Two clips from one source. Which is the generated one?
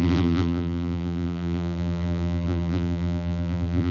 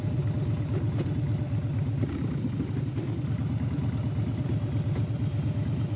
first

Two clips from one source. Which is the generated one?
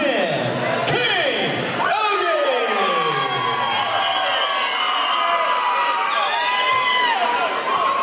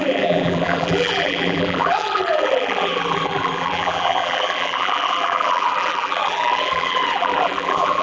second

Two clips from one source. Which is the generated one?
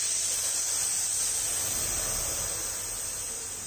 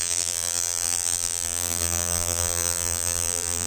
second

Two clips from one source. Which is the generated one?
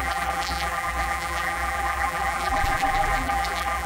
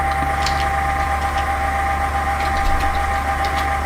first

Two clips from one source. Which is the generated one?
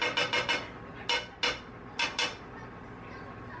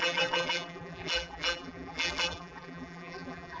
second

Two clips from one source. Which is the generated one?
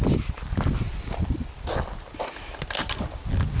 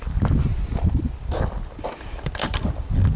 second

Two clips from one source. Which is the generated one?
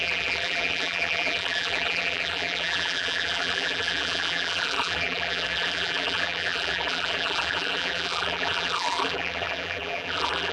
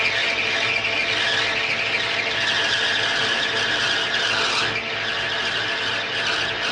first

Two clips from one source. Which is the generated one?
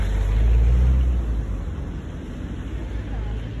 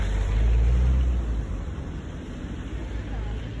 second